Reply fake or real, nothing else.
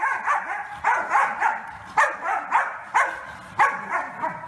real